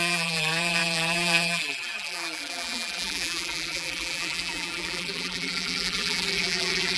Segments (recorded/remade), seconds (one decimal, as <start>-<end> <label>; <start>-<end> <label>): 0.0-7.0 remade